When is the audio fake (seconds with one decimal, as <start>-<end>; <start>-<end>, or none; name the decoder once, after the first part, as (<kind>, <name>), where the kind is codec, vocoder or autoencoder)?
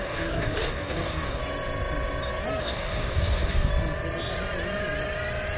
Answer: 0.0-1.4 (codec, DAC); 2.6-3.7